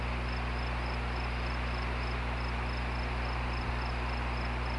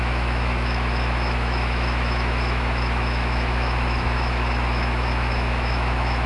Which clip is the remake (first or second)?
second